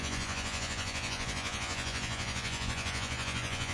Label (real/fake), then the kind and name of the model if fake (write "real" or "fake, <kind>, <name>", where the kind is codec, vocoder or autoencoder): fake, vocoder, Vocos